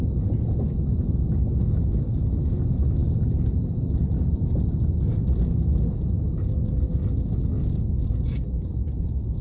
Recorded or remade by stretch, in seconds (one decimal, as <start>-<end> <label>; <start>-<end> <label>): 0.0-9.4 recorded